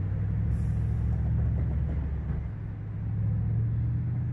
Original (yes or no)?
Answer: yes